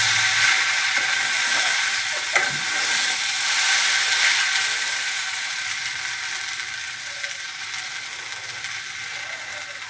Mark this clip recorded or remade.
recorded